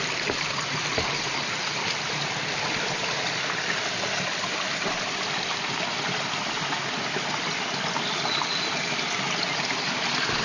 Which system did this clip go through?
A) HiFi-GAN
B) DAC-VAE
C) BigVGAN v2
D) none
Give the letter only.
D